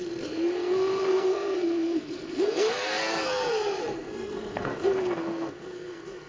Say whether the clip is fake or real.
fake